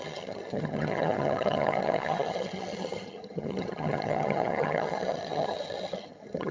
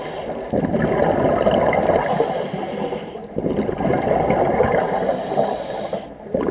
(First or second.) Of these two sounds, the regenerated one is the first